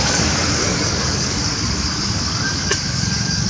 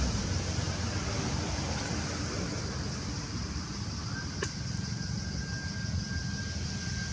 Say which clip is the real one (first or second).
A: second